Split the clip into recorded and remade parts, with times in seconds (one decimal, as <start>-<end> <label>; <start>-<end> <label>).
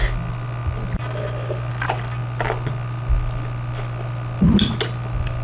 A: 0.0-5.4 recorded